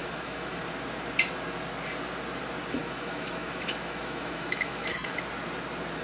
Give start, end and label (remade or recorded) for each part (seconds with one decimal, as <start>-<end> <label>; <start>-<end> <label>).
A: 0.0-0.6 remade; 0.6-2.8 recorded; 2.8-5.2 remade; 5.2-6.0 recorded